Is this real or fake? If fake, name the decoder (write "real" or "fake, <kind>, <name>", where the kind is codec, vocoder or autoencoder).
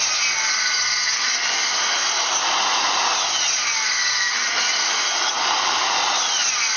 real